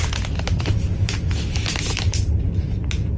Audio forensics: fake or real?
real